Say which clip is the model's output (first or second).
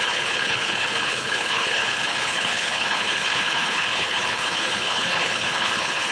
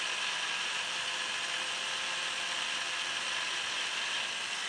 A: first